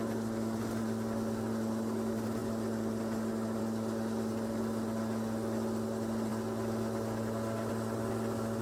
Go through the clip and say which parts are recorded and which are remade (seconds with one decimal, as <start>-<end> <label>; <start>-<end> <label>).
0.0-8.6 recorded